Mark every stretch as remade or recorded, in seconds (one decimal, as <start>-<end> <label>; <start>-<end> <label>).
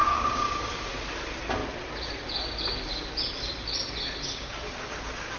0.0-0.6 remade; 0.6-5.4 recorded